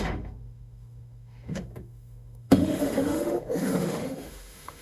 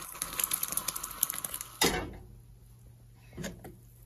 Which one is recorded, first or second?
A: second